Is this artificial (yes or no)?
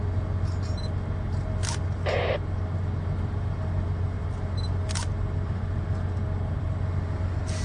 no